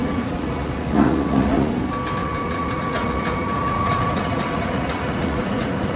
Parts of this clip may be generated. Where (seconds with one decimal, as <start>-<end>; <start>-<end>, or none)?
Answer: 0.0-1.7; 2.2-6.0

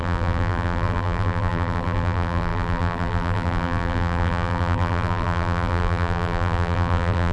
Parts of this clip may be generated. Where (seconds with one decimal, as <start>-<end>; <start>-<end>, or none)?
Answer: 0.0-7.3